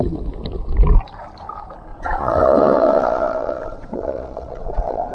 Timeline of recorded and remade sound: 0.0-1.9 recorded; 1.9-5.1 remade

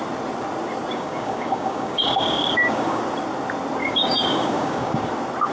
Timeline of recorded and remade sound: 0.0-0.9 recorded; 0.9-3.0 remade; 3.0-3.8 recorded; 3.8-5.1 remade; 5.1-5.5 recorded

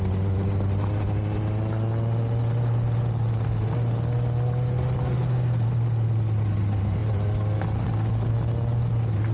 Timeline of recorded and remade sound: 0.0-9.3 recorded

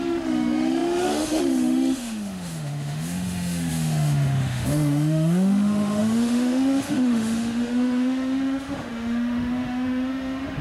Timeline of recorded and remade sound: 0.0-10.6 remade